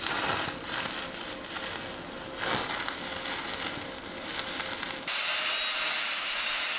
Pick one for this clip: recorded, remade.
recorded